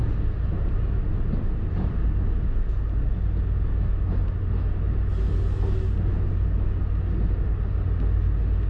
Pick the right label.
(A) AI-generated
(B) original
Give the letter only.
B